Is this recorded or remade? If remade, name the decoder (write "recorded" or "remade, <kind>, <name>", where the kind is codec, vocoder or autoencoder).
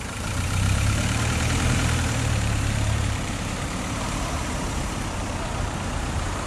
remade, vocoder, BigVGAN v2